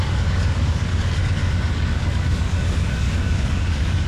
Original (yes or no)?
no